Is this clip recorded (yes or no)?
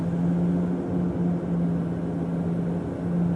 yes